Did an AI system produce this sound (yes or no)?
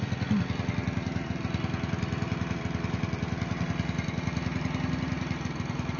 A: no